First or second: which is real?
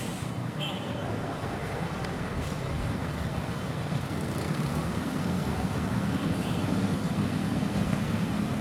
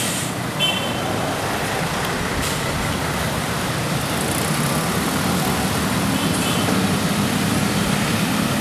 second